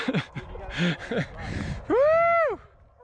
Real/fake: real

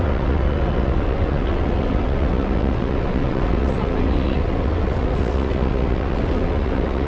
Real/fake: fake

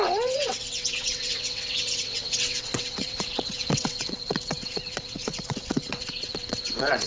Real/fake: fake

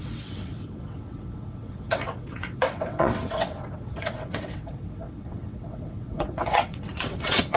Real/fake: fake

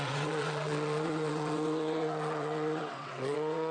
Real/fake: fake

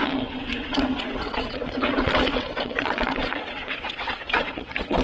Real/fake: fake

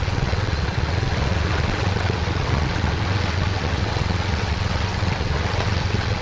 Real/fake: fake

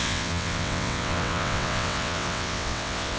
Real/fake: fake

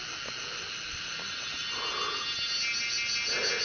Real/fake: real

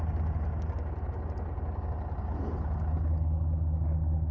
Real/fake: real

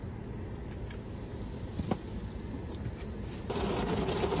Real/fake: real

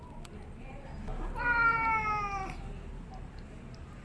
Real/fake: real